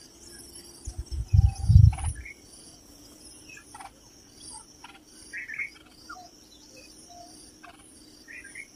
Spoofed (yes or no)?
no